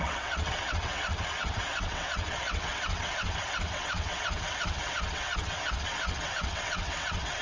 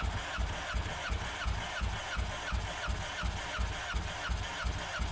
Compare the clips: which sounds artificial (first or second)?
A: first